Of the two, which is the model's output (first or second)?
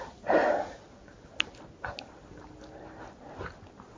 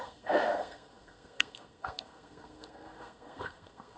second